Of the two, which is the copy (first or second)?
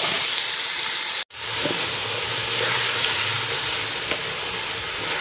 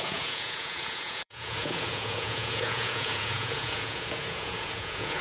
second